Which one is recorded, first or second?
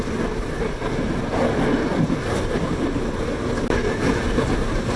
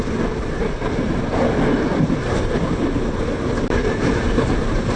first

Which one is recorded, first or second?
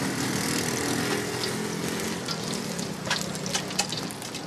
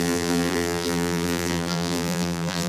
first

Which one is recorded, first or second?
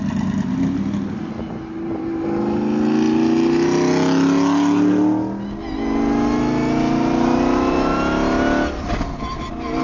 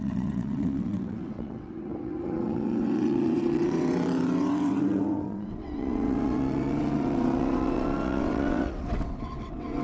first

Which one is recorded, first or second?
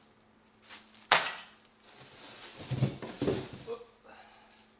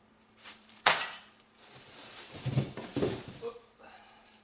first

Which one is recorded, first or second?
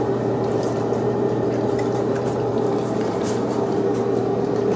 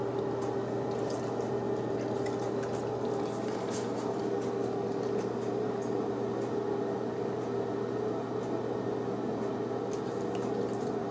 second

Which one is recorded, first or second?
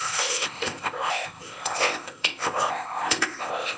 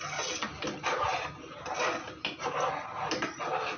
second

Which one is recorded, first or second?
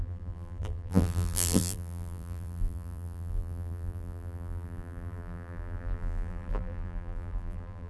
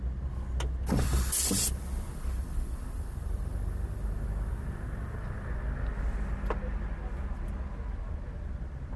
second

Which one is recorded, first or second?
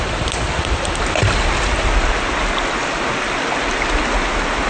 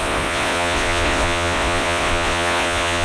first